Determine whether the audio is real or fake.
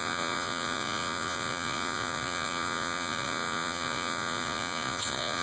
fake